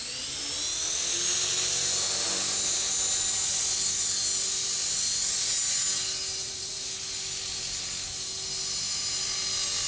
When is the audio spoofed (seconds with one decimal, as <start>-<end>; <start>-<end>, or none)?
6.4-6.9